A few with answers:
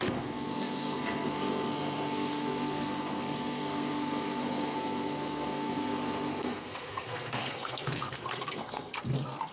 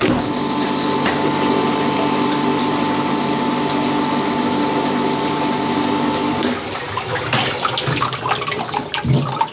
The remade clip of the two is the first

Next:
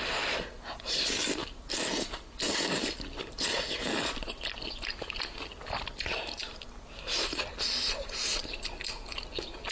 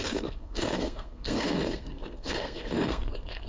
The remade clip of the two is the second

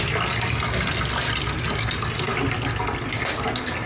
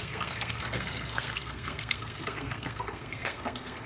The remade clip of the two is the second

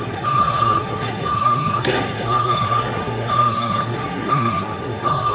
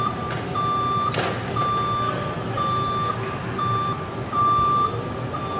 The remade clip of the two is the first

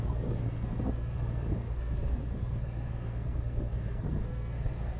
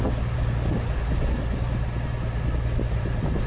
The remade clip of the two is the first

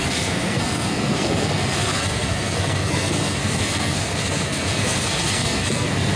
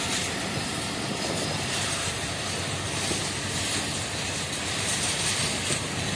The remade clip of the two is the first